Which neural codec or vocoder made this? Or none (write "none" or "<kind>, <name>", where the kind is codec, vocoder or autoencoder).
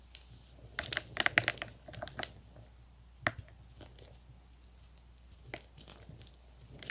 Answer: none